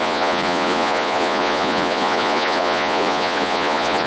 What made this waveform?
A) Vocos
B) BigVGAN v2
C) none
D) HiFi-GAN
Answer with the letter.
A